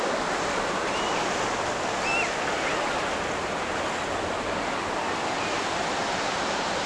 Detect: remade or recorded recorded